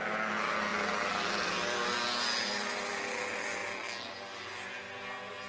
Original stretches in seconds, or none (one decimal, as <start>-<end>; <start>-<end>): 0.0-5.5